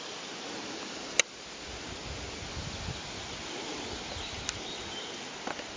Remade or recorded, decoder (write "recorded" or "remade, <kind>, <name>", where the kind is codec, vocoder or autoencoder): recorded